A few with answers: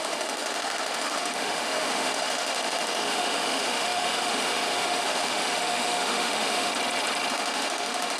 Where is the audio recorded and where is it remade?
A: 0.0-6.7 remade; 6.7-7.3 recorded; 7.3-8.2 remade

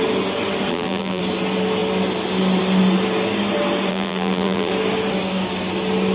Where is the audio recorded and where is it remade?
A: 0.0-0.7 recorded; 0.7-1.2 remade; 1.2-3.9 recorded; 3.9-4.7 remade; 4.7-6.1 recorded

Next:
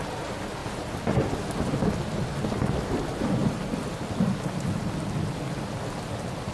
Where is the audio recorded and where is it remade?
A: 0.0-6.5 recorded